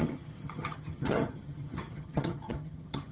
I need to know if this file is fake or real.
fake